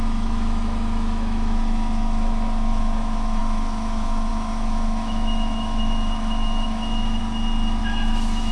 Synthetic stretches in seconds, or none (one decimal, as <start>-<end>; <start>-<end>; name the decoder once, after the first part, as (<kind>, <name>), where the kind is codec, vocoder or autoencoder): 0.0-7.2 (autoencoder, DAC-VAE); 7.8-8.5